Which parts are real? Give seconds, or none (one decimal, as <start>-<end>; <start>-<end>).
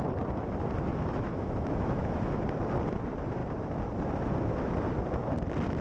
0.0-0.9; 2.3-5.8